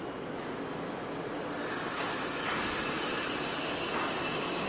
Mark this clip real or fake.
real